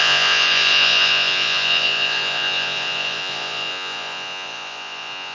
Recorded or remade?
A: remade